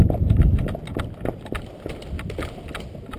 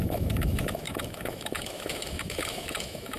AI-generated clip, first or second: second